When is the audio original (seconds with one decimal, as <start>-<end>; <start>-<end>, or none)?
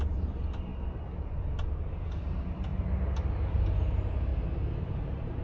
0.7-1.8; 2.7-3.5; 4.3-4.9